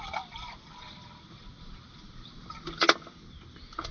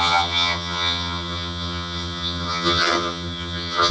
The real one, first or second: first